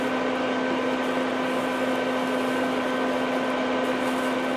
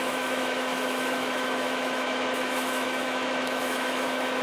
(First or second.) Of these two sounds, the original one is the first